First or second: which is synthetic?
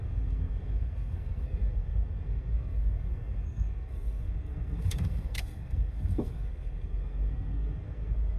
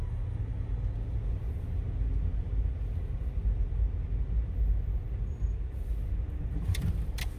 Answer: first